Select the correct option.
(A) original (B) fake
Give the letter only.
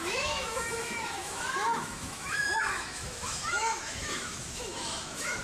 B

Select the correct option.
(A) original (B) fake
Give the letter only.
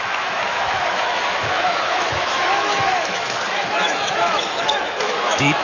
B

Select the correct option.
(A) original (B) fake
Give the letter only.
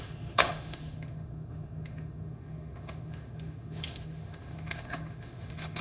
B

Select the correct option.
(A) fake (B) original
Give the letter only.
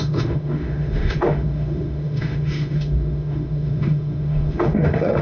A